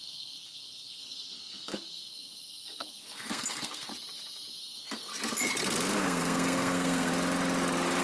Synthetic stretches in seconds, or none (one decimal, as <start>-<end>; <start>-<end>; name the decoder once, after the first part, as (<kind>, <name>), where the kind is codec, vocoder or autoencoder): 0.0-3.9 (codec, SNAC); 4.6-5.1; 6.0-7.1